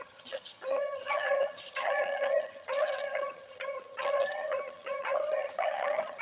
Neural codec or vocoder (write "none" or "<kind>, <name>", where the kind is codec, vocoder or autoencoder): vocoder, HiFi-GAN